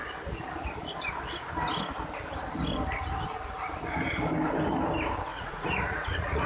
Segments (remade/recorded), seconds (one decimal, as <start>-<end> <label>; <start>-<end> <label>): 0.0-5.3 recorded; 5.3-6.5 remade